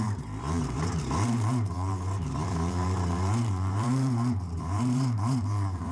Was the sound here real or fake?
fake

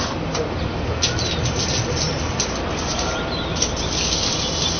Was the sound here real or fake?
fake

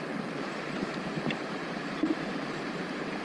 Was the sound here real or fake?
fake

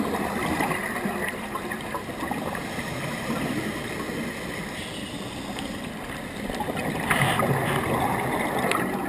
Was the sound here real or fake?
real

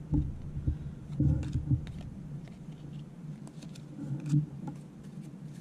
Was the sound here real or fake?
real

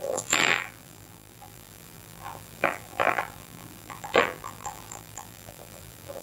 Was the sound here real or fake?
fake